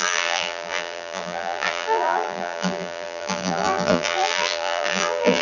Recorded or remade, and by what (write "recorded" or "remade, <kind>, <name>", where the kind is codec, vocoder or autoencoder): remade, vocoder, BigVGAN v2